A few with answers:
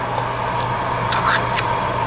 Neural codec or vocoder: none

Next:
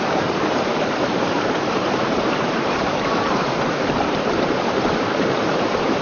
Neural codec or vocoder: vocoder, BigVGAN v2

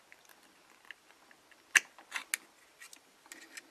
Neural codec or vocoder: none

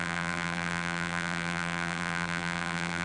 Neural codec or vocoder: vocoder, BigVGAN v2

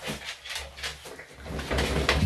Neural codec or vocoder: none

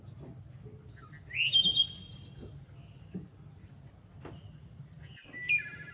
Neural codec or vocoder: none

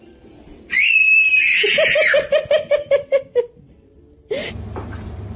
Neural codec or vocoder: vocoder, BigVGAN v2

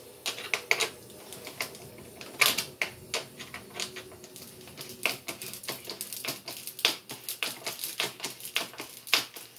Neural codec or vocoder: none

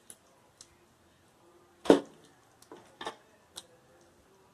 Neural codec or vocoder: none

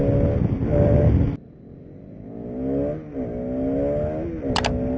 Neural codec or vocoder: none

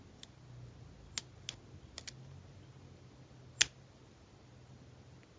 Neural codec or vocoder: none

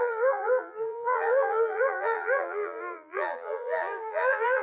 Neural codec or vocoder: vocoder, BigVGAN v2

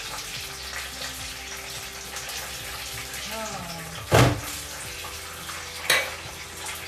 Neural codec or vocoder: none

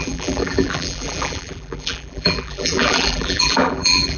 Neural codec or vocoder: vocoder, BigVGAN v2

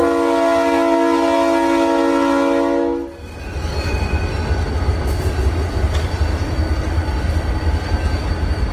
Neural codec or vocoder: none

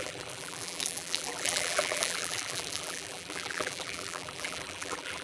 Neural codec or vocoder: vocoder, BigVGAN v2